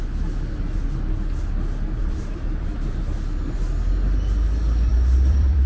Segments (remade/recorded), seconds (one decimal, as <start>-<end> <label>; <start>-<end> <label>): 0.0-2.0 recorded; 2.0-3.0 remade; 3.0-4.9 recorded; 4.9-5.7 remade